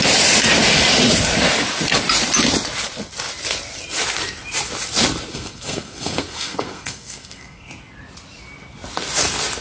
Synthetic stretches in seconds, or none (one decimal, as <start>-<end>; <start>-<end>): 5.3-7.7